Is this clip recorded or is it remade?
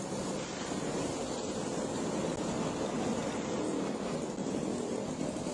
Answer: recorded